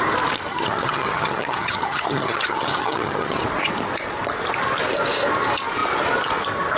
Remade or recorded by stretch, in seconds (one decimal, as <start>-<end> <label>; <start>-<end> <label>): 0.0-0.5 recorded; 0.5-3.4 remade; 3.4-6.8 recorded